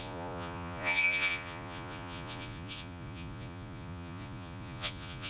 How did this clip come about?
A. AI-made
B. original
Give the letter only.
A